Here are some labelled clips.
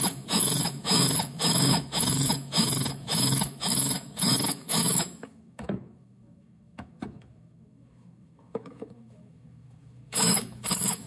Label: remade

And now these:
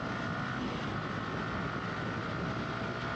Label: recorded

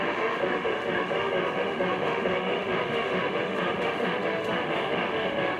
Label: remade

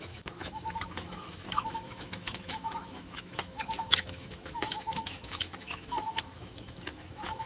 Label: remade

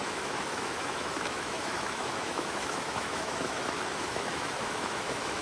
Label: remade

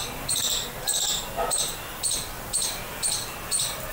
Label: recorded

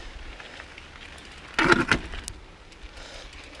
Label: recorded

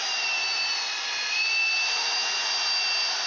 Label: recorded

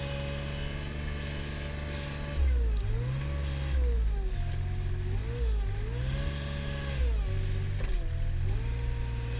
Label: recorded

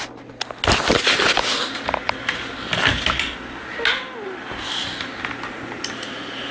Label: recorded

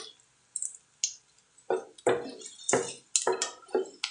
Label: recorded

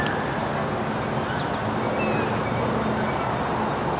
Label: recorded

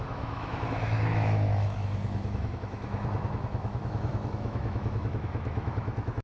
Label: remade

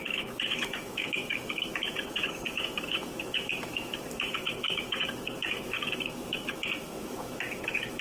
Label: remade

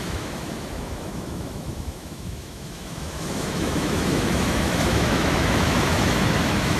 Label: remade